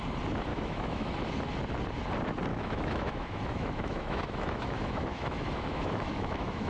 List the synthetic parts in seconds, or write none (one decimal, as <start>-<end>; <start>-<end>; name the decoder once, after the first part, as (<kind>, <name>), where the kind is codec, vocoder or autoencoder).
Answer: 0.5-1.1 (autoencoder, DAC-VAE); 2.5-6.7